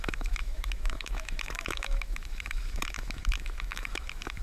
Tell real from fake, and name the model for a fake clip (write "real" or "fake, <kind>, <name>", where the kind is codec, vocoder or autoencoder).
fake, autoencoder, DAC-VAE